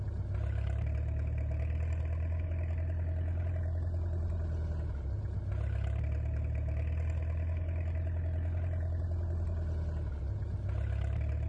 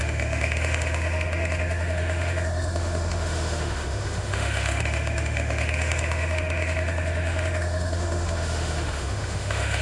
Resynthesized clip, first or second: second